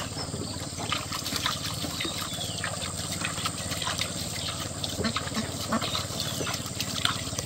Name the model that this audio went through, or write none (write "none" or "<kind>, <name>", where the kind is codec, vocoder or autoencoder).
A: vocoder, BigVGAN v2